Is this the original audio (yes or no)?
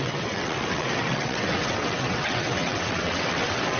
no